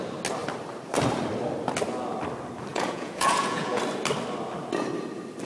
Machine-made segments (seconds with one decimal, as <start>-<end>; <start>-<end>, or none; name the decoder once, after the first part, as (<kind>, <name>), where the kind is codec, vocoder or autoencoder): 2.7-3.8 (vocoder, Vocos)